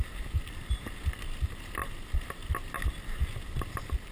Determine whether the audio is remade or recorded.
recorded